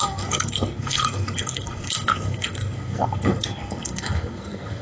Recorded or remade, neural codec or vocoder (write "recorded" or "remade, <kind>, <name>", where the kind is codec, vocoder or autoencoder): remade, codec, SNAC